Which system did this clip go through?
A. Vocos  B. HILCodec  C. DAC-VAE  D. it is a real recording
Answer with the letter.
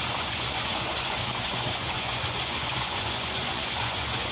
A